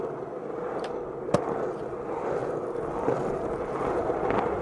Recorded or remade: recorded